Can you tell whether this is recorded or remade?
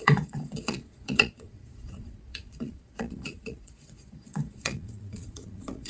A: remade